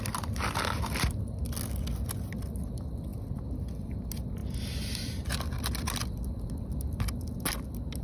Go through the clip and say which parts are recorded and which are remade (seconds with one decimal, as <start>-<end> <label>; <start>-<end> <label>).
0.0-8.0 recorded